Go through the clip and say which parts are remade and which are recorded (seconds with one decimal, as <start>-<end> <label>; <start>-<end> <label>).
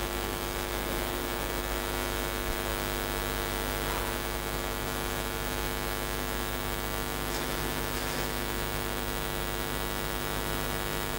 0.0-2.7 remade; 2.7-4.0 recorded; 4.0-11.2 remade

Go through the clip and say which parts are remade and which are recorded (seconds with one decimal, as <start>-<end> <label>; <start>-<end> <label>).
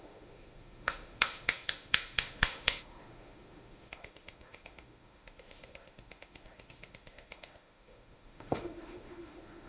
0.0-9.7 remade